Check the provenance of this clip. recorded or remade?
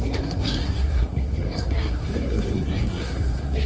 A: remade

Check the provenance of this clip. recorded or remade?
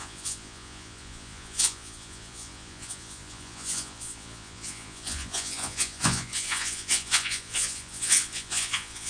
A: remade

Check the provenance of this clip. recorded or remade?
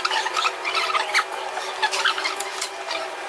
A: recorded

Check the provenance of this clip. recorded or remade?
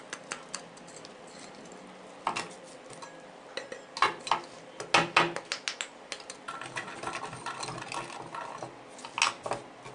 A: recorded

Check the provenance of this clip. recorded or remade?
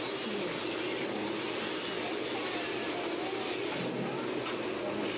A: recorded